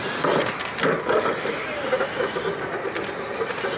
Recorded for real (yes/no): yes